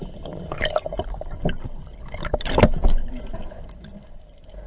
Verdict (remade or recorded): recorded